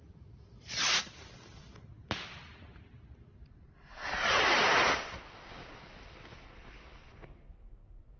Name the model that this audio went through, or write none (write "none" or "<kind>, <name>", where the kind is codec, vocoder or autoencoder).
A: none